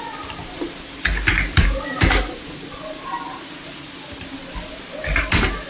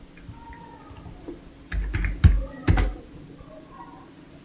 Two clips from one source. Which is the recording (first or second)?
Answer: second